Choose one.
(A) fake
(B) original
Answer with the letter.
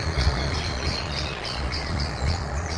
A